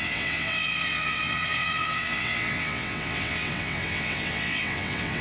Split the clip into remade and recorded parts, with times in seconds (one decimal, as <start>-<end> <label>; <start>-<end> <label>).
0.0-5.2 remade